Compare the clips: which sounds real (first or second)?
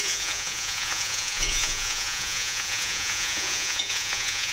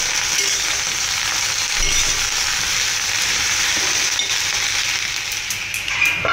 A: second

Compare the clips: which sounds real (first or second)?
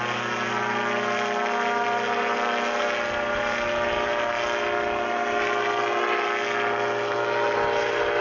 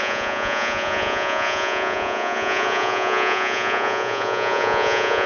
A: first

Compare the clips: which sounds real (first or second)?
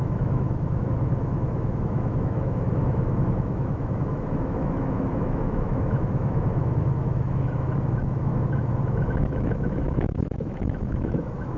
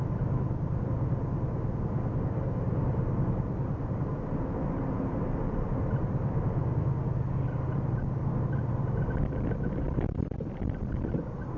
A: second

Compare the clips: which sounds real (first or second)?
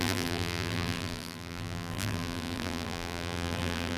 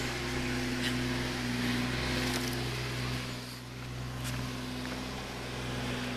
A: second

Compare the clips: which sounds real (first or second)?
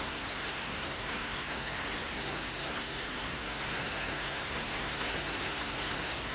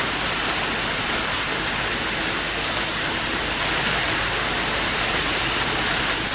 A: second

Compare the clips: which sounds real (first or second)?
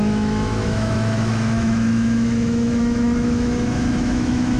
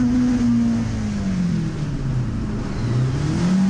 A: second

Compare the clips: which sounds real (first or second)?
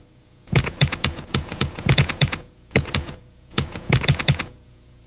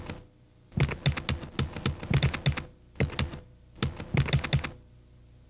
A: second